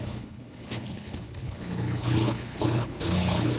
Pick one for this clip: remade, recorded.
remade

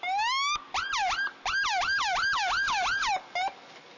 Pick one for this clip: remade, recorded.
recorded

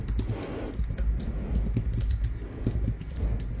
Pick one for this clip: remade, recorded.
recorded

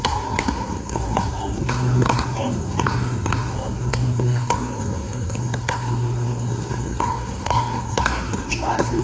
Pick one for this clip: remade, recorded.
remade